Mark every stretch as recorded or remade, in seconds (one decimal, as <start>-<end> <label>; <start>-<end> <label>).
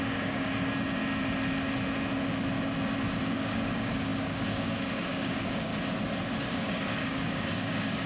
0.0-1.0 remade; 1.0-3.2 recorded; 3.2-5.7 remade; 5.7-6.4 recorded; 6.4-8.1 remade